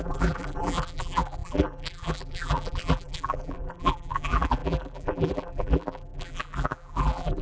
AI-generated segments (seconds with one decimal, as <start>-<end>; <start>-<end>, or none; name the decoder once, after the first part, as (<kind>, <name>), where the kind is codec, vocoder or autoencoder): 0.0-7.4 (vocoder, BigVGAN v2)